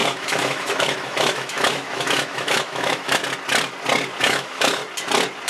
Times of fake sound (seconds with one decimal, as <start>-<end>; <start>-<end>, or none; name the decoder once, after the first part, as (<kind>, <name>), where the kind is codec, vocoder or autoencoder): 0.0-3.2 (autoencoder, DAC-VAE); 4.2-4.8